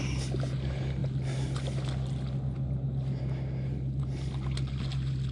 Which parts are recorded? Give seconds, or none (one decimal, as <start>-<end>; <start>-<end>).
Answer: 0.0-5.3